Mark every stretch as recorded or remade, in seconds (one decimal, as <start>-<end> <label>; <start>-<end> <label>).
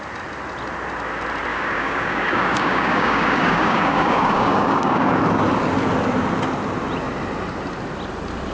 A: 0.0-1.5 recorded; 1.5-5.2 remade; 5.2-8.5 recorded